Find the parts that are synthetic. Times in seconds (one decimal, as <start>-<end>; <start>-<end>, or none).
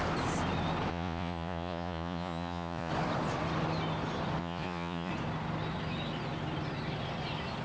0.9-2.9; 4.4-5.1